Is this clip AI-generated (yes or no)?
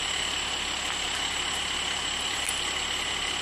no